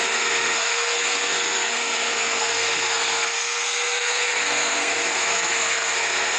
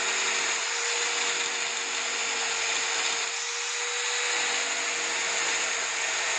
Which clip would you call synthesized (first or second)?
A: first